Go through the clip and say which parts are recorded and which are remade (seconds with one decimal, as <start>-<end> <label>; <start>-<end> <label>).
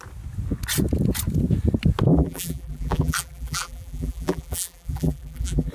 0.0-2.1 recorded; 2.1-5.7 remade